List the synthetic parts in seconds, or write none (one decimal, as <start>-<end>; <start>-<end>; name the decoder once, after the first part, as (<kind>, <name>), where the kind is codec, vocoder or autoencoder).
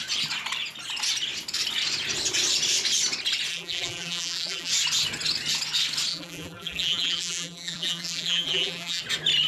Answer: 3.5-4.7 (vocoder, BigVGAN v2); 6.1-9.0